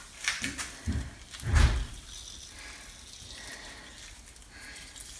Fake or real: real